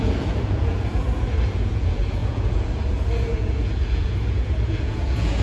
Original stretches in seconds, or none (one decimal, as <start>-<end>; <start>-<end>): none